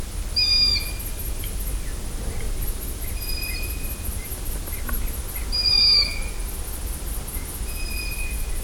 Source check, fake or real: real